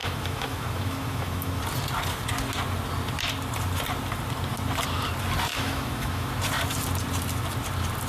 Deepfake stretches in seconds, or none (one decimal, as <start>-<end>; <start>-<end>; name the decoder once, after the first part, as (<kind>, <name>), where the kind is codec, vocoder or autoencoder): 0.0-1.6 (autoencoder, DAC-VAE); 5.5-6.3